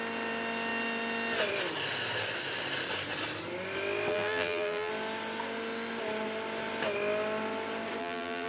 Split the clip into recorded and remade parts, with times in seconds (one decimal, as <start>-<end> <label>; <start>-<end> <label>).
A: 0.0-4.1 recorded; 4.1-4.9 remade; 4.9-8.0 recorded; 8.0-8.5 remade

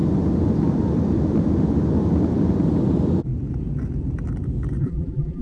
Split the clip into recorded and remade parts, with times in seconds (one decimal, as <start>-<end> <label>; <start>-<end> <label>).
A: 0.0-4.8 recorded; 4.8-5.4 remade

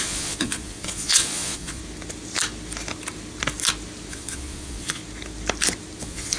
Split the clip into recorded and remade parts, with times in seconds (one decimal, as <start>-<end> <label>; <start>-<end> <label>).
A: 0.0-1.8 remade; 1.8-4.1 recorded; 4.1-5.0 remade; 5.0-6.0 recorded; 6.0-6.4 remade

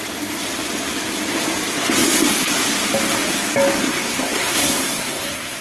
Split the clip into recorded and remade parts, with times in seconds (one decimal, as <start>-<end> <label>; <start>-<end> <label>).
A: 0.0-3.8 recorded; 3.8-5.6 remade

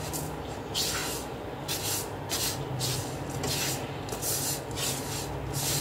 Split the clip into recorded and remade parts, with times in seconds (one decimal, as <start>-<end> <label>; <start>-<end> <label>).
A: 0.0-5.8 recorded

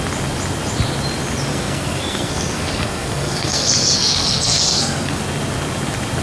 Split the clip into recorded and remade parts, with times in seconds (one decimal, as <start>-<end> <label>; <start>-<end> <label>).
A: 0.0-1.5 recorded; 1.5-5.2 remade; 5.2-6.2 recorded